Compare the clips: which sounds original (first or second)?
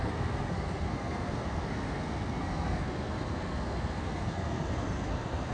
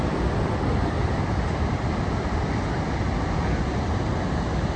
second